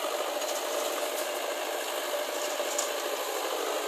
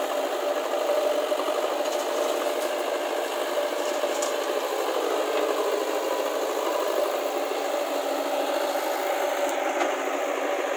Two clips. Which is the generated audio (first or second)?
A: first